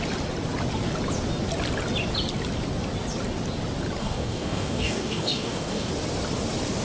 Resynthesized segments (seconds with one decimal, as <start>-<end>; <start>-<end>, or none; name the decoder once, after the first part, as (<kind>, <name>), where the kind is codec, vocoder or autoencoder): 4.0-5.9 (codec, DAC)